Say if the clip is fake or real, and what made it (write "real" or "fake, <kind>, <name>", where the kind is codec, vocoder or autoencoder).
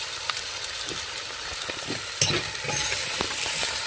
real